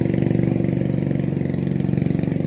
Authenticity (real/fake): real